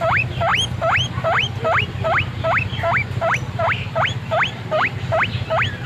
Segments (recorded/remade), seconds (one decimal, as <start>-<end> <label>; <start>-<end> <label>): 0.0-5.9 recorded

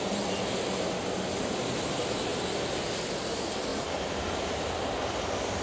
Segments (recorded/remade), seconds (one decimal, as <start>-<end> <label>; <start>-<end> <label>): 0.0-3.7 recorded; 3.7-5.1 remade; 5.1-5.6 recorded

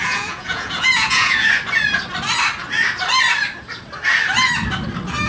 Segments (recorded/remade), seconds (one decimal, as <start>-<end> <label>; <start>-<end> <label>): 0.0-1.5 remade; 1.5-5.3 recorded

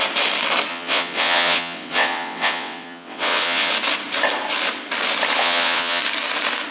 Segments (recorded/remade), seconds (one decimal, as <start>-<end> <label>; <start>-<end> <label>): 0.0-0.7 recorded; 0.7-3.7 remade; 3.7-5.4 recorded; 5.4-6.0 remade; 6.0-6.7 recorded

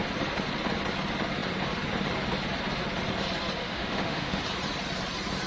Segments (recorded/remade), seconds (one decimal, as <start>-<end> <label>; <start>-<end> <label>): 0.0-3.6 recorded; 3.6-4.4 remade; 4.4-5.5 recorded